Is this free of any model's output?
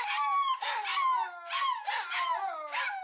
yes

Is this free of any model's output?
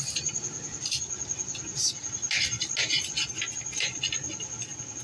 yes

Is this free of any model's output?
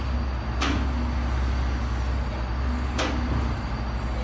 yes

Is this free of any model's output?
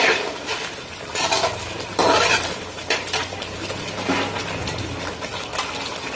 yes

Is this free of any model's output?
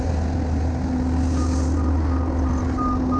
yes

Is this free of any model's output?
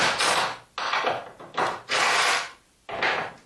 yes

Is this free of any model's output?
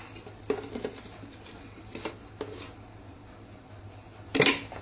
yes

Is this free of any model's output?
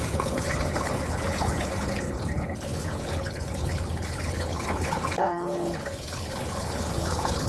no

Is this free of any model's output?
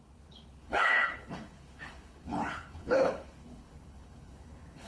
no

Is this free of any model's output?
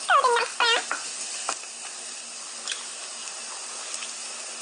yes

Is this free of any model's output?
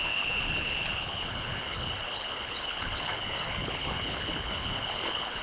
no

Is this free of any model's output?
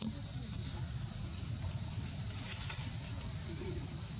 yes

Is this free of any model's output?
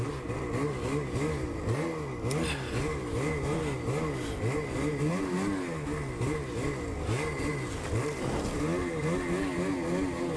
yes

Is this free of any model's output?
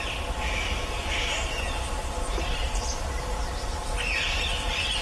yes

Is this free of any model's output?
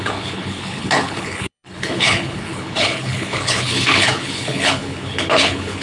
no